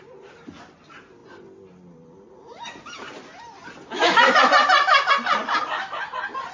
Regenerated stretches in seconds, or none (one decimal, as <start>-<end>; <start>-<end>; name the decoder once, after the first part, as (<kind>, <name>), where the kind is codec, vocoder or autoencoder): none